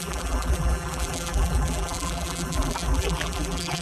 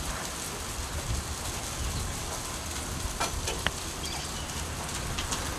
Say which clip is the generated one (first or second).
first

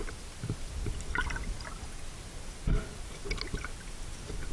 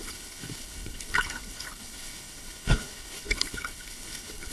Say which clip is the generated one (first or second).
second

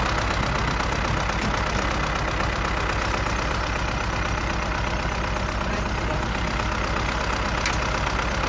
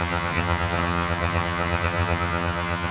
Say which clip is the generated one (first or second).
second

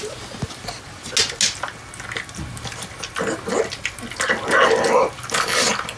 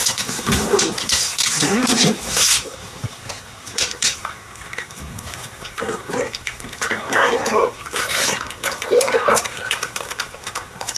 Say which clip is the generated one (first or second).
second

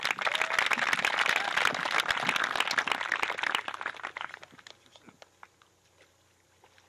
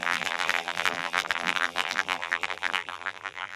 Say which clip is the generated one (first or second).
second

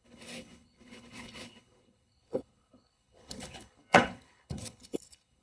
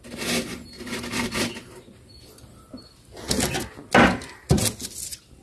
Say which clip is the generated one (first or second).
first